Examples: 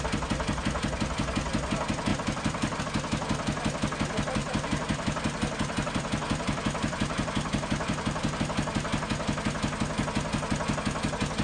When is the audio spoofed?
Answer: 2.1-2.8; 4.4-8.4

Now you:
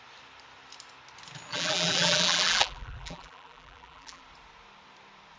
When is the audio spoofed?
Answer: 1.5-4.2

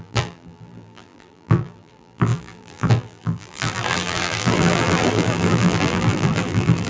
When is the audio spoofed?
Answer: 0.0-6.9

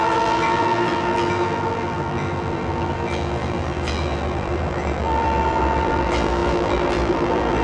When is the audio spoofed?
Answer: 0.0-7.6

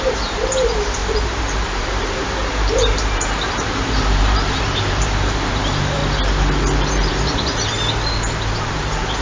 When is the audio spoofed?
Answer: 0.0-6.0; 7.1-7.5

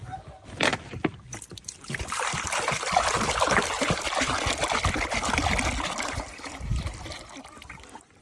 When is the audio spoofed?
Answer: 0.7-4.5